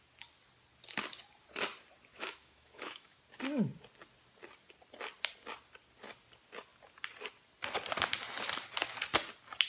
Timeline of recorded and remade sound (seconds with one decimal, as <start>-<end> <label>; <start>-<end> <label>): 0.0-2.1 recorded; 2.1-3.2 remade; 3.2-9.7 recorded